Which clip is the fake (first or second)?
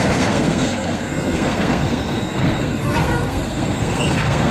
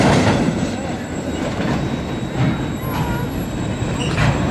first